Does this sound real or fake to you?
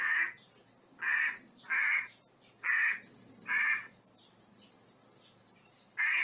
real